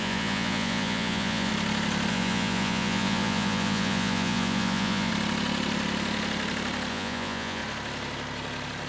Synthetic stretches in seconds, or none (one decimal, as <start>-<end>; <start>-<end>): 0.0-1.5; 2.1-5.1; 6.9-7.6